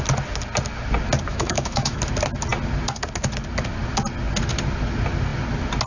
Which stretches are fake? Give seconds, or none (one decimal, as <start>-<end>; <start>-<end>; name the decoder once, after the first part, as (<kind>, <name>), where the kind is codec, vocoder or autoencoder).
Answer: 1.3-2.0 (autoencoder, DAC-VAE)